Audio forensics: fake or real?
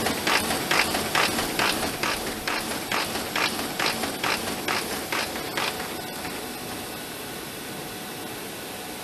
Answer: real